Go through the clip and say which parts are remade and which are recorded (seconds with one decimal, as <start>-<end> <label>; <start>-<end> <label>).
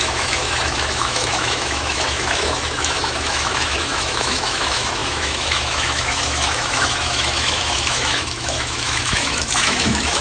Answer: 0.0-10.2 remade